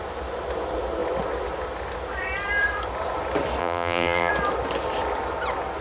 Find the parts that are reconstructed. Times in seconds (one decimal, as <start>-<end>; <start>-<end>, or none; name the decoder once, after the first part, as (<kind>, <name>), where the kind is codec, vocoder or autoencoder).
3.6-4.3 (vocoder, BigVGAN v2)